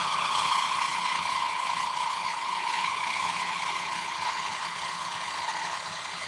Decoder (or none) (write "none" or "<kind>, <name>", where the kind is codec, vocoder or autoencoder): codec, HILCodec